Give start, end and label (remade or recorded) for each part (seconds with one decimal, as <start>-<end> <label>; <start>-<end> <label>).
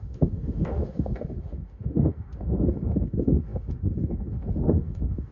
0.0-5.3 remade